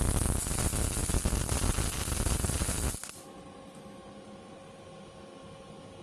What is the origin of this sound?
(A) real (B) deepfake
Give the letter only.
A